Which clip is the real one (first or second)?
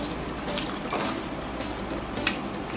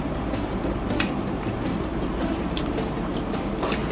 first